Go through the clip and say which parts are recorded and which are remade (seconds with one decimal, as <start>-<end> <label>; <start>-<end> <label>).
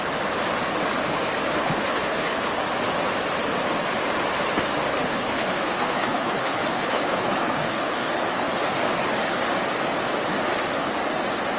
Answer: 0.0-1.6 recorded; 1.6-2.5 remade; 2.5-4.9 recorded; 4.9-8.1 remade; 8.1-11.6 recorded